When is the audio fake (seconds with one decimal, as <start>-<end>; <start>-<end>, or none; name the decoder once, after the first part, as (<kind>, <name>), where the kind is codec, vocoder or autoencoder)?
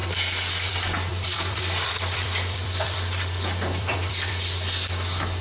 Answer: 1.1-4.3 (vocoder, BigVGAN v2)